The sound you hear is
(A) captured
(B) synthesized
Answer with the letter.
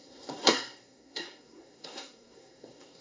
B